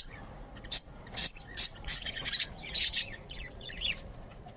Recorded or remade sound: remade